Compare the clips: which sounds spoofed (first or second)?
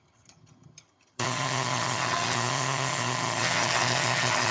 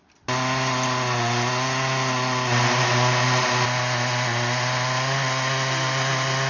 first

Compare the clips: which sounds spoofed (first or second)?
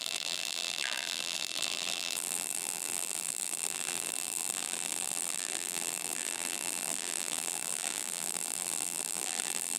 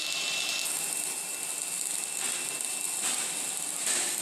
first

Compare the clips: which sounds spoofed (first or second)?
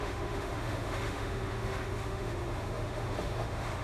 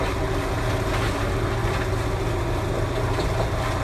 first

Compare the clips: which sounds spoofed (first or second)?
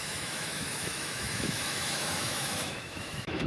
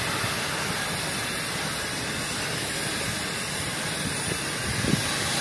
first